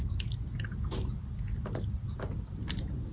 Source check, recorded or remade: recorded